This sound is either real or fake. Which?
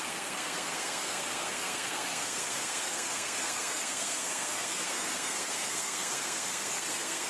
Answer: fake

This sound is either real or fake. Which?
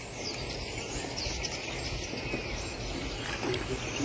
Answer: real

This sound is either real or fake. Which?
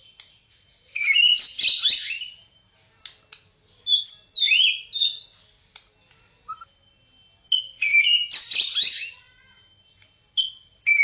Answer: real